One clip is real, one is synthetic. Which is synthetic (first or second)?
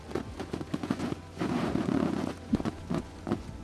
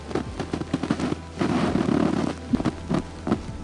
first